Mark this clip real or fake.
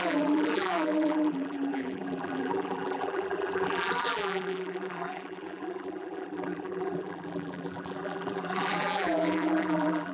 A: fake